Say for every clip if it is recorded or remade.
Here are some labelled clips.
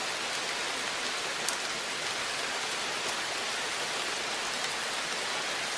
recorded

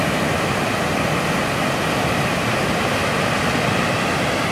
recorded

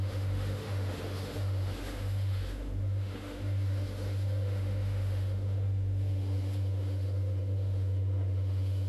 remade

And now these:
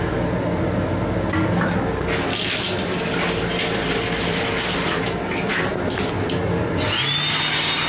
recorded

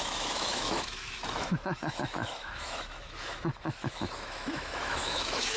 remade